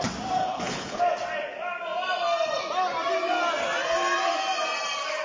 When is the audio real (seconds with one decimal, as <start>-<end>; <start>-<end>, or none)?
0.0-0.4; 1.0-5.2